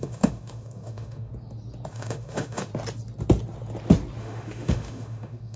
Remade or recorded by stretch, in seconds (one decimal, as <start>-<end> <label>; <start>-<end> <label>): 0.0-1.3 remade; 1.3-1.9 recorded; 1.9-2.7 remade; 2.7-4.2 recorded; 4.2-5.6 remade